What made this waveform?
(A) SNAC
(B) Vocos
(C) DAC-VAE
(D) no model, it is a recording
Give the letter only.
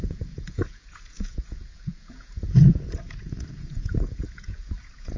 B